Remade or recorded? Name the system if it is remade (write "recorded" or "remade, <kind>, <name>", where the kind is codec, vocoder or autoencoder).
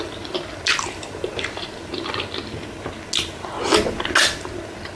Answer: recorded